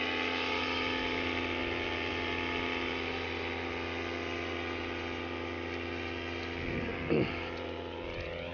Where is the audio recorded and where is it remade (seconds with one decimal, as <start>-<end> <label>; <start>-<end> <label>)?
0.0-8.5 recorded